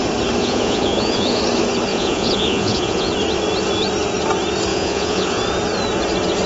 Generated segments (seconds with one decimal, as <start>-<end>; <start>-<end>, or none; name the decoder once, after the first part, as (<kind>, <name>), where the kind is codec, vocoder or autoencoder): 0.4-1.4 (vocoder, Vocos); 1.9-3.1; 4.7-5.4